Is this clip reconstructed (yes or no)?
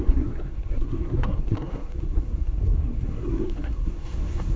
yes